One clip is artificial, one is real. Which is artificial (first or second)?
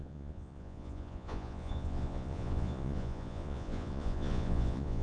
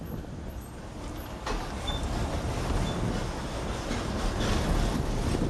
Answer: first